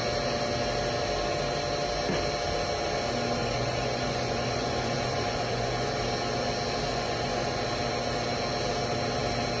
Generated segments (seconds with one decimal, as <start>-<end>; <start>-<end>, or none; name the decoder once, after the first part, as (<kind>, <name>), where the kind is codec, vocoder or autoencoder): 3.4-5.9 (vocoder, Vocos); 6.9-7.6